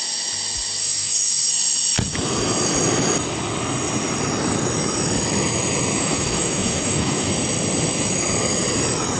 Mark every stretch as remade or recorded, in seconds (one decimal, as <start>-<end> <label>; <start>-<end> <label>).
0.0-0.8 recorded; 0.8-1.5 remade; 1.5-6.0 recorded; 6.0-7.3 remade; 7.3-9.2 recorded